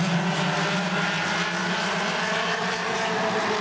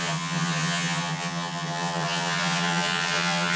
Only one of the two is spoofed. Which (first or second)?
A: second